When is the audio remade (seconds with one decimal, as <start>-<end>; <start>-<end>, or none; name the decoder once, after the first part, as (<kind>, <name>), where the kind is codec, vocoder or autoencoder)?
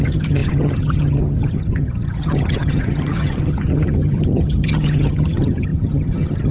0.0-6.5 (vocoder, HiFi-GAN)